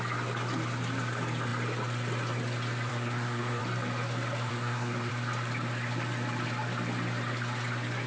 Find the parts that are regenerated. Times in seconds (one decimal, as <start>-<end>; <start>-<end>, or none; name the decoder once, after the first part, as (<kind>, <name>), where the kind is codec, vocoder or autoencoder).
2.9-3.6 (codec, SNAC); 4.5-5.1